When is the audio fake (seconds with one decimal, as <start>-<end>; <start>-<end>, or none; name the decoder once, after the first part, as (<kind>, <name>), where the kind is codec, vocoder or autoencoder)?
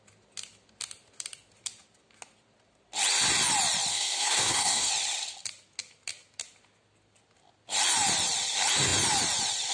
3.9-4.9 (codec, SNAC)